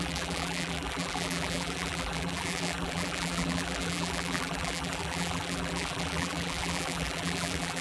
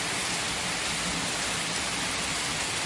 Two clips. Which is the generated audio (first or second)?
first